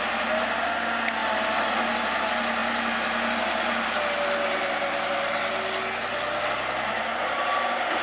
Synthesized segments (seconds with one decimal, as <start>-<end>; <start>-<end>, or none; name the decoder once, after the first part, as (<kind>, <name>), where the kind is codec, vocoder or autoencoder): none